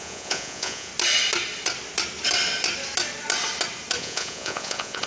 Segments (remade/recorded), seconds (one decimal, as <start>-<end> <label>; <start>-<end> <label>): 0.0-0.9 remade; 0.9-4.0 recorded; 4.0-5.1 remade